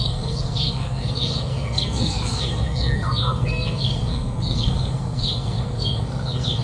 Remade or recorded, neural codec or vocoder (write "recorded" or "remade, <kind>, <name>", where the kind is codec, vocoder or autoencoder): remade, codec, SNAC